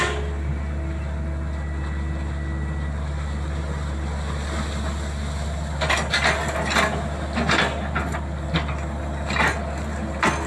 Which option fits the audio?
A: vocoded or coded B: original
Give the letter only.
B